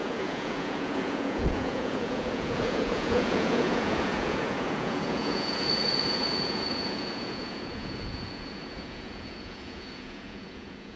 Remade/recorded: remade